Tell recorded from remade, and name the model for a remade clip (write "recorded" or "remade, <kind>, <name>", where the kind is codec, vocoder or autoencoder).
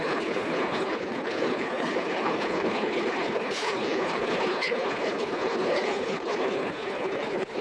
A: remade, codec, HILCodec